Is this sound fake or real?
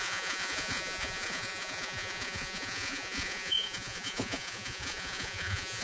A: fake